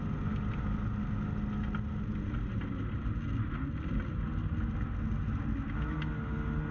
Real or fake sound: real